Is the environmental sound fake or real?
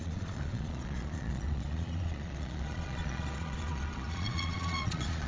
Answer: fake